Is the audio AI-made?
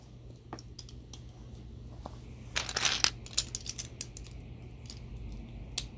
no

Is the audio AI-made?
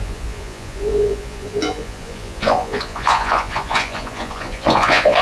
yes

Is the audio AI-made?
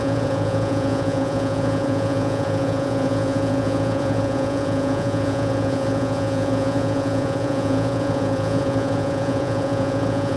yes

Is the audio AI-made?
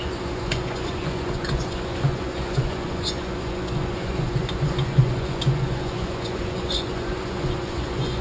yes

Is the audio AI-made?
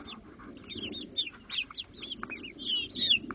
no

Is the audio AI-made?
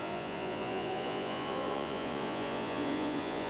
yes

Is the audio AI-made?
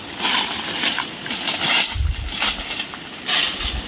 no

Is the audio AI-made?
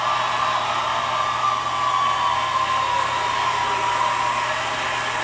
no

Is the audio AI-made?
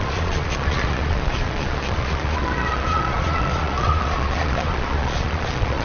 yes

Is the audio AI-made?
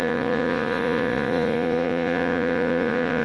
yes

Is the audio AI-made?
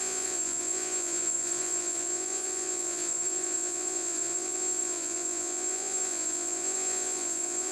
yes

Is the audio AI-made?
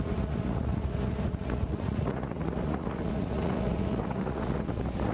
yes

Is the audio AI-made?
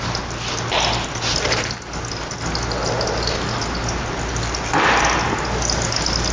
no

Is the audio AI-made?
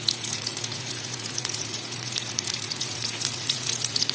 yes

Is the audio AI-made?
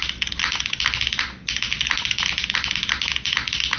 no